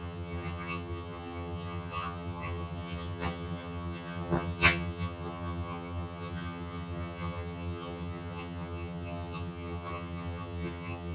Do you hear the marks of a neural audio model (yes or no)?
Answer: yes